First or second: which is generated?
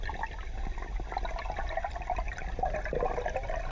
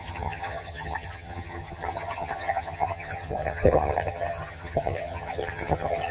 second